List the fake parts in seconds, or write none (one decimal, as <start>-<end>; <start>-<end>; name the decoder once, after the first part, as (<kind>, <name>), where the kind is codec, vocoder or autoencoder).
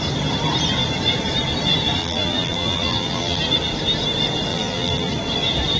2.0-3.4 (vocoder, BigVGAN v2); 4.5-5.1